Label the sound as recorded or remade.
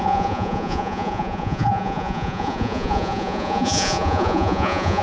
remade